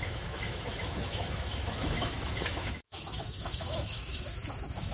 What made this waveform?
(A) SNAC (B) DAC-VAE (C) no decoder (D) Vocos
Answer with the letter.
B